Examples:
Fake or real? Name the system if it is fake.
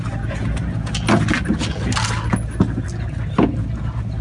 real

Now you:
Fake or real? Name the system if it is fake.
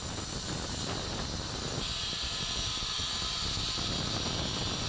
real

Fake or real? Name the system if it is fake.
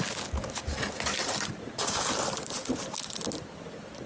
real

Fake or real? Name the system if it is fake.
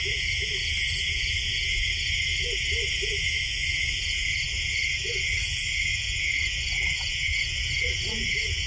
fake, vocoder, Vocos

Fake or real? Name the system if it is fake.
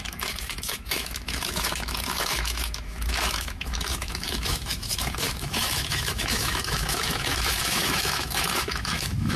fake, autoencoder, DAC-VAE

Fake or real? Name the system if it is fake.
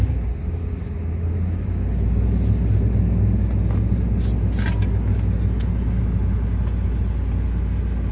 real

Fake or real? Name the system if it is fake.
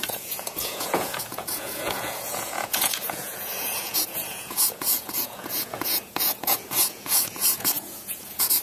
fake, vocoder, Vocos